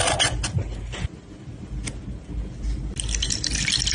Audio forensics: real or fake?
real